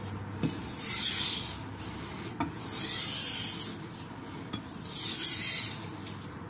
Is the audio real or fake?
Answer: real